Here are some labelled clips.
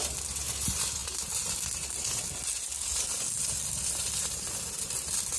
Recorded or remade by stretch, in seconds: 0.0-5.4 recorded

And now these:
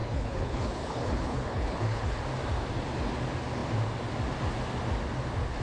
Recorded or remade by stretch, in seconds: 0.0-2.2 remade; 2.2-5.6 recorded

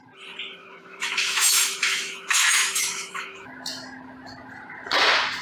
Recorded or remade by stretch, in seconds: 0.0-0.6 recorded; 0.6-3.5 remade; 3.5-5.4 recorded

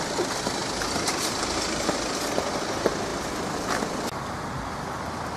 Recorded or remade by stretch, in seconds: 0.0-5.4 recorded

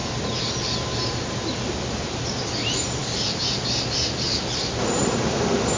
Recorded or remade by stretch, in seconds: 0.0-5.8 recorded

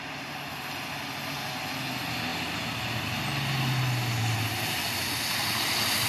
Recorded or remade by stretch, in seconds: 0.0-6.1 recorded